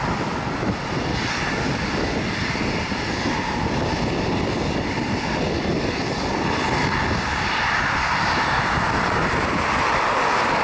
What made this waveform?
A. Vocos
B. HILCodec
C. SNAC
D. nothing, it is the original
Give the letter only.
D